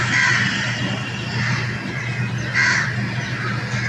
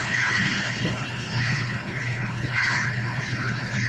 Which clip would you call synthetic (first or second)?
second